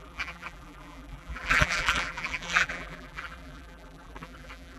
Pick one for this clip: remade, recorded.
remade